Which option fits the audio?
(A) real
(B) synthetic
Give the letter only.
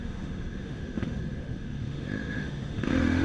B